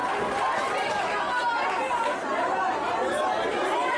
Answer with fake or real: real